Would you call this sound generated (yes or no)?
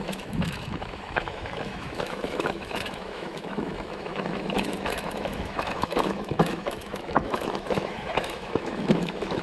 yes